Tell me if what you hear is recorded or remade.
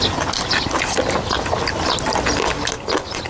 recorded